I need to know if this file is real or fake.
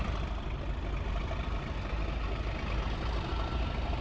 real